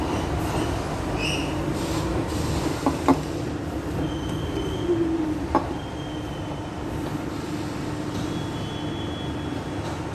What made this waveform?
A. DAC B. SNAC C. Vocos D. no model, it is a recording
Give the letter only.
D